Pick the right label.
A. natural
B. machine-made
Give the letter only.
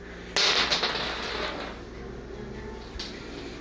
A